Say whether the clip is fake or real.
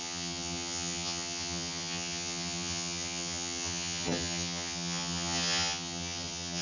fake